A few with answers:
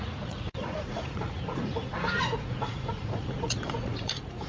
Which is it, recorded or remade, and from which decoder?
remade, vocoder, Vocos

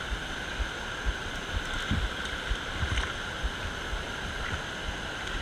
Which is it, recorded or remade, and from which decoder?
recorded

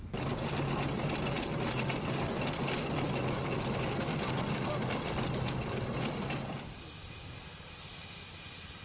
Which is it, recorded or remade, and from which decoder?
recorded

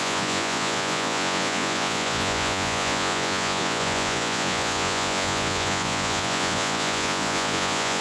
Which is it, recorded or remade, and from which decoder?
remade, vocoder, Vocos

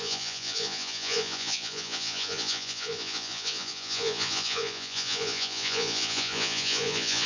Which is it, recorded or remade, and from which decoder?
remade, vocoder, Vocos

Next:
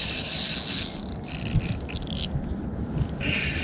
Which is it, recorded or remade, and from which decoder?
recorded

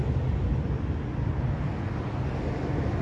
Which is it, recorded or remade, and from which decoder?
recorded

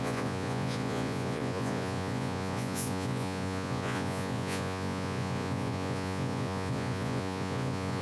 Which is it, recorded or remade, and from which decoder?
remade, vocoder, Vocos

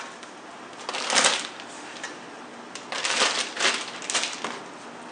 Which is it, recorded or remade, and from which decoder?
recorded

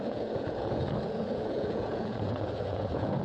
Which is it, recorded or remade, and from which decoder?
remade, vocoder, Vocos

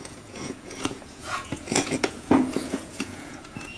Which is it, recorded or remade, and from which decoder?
remade, vocoder, Vocos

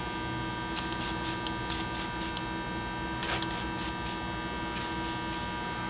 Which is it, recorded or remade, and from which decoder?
recorded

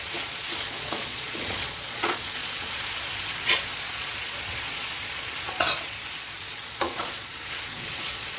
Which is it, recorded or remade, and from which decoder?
remade, vocoder, Vocos